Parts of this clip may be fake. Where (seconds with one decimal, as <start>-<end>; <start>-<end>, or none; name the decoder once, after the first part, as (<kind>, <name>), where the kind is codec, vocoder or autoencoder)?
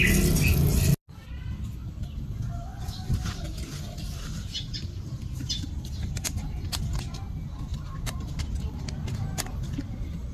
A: 7.7-8.8 (vocoder, BigVGAN v2)